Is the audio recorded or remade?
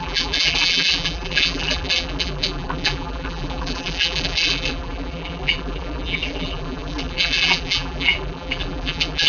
remade